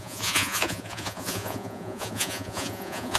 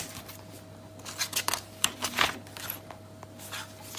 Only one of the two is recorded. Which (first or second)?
second